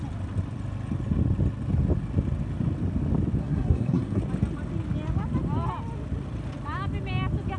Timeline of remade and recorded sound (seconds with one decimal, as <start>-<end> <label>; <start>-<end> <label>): 0.0-3.4 recorded; 3.4-4.2 remade; 4.2-7.6 recorded